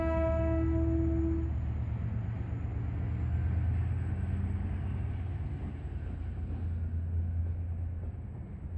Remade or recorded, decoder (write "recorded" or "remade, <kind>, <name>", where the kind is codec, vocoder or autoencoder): recorded